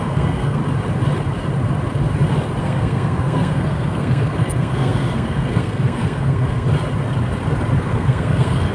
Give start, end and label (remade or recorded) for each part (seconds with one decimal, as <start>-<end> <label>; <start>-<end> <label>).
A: 0.0-0.6 remade; 0.6-2.6 recorded; 2.6-6.7 remade; 6.7-7.8 recorded; 7.8-8.7 remade